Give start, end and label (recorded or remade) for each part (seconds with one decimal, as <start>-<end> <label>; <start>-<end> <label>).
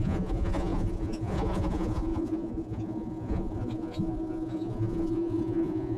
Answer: 0.0-6.0 remade